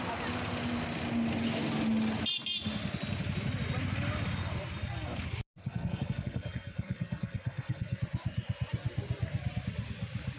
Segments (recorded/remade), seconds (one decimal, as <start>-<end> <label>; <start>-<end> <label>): 0.0-5.6 recorded; 5.6-8.0 remade; 8.0-10.4 recorded